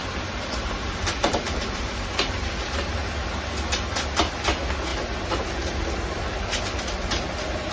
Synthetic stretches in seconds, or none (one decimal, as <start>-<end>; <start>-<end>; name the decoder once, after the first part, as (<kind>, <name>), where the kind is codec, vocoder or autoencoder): 0.0-2.4 (vocoder, BigVGAN v2)